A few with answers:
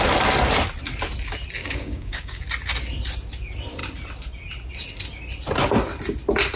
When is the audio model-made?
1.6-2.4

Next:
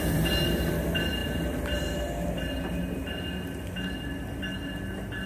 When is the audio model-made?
none

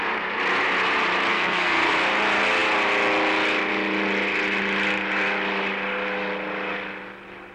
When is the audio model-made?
1.3-1.9